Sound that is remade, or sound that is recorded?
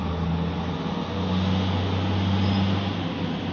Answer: recorded